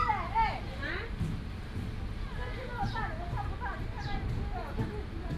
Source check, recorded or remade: recorded